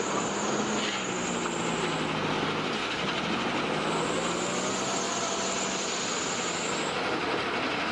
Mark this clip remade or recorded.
recorded